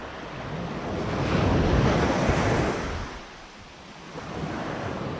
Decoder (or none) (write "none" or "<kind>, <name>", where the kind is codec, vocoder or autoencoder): none